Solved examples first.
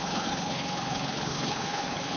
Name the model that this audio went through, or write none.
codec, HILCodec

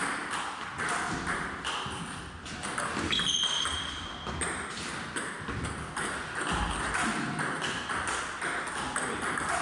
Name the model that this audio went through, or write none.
none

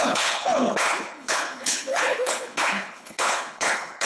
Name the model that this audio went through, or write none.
codec, HILCodec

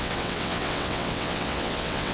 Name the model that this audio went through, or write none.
vocoder, WaveNeXt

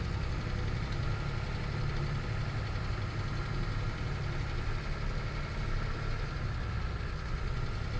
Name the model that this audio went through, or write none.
none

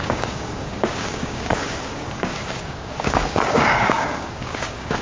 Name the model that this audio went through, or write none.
codec, DAC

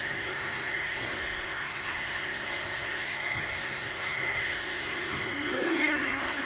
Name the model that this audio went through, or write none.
codec, SNAC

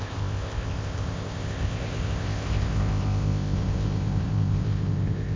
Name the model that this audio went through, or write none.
codec, ZipCodec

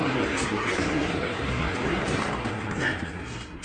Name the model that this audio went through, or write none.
codec, SNAC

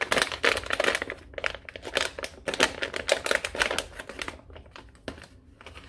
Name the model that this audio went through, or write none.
none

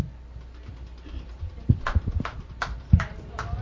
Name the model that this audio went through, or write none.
none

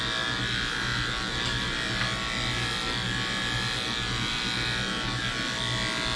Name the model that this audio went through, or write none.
none